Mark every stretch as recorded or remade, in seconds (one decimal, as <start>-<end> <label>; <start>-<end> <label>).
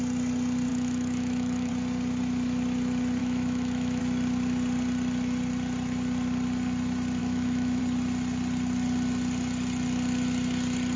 0.0-0.7 recorded; 0.7-1.7 remade; 1.7-3.2 recorded; 3.2-4.0 remade; 4.0-7.2 recorded; 7.2-7.8 remade; 7.8-11.0 recorded